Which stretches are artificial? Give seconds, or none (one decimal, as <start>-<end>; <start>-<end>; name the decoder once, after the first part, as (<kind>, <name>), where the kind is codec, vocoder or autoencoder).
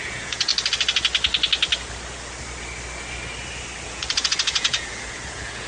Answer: 0.0-0.5 (vocoder, Vocos); 3.9-5.7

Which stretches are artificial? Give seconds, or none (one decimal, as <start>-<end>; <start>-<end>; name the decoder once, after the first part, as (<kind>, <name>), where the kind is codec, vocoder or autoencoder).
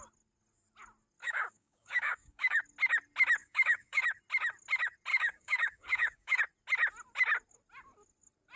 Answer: 1.2-2.6 (codec, DAC); 3.4-4.0; 5.1-6.4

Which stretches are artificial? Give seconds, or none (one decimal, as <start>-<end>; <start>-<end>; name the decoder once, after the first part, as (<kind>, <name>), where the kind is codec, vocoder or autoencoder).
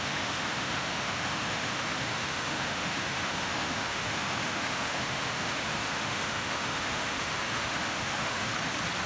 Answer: 0.0-8.5 (autoencoder, DAC-VAE)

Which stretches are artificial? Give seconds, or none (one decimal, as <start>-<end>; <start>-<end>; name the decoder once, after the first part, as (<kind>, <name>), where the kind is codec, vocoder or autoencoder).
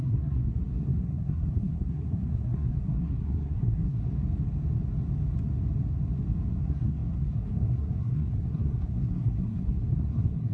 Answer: 0.0-4.0 (codec, SNAC); 6.5-10.5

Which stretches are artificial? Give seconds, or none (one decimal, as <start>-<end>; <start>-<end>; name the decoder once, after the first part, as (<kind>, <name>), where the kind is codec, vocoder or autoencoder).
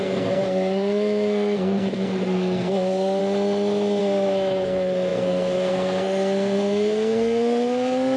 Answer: 0.0-3.2 (codec, SNAC); 4.0-8.2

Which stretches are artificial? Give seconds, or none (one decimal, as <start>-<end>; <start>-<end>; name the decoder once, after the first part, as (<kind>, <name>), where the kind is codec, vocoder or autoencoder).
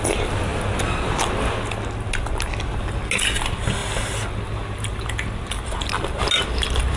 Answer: none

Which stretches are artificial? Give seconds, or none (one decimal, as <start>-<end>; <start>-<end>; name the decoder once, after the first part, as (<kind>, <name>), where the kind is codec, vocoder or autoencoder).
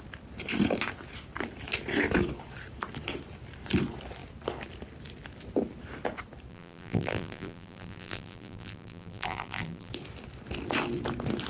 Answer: 6.5-9.9 (vocoder, BigVGAN v2)